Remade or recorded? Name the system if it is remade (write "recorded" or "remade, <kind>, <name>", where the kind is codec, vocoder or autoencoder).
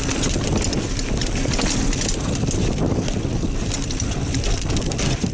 recorded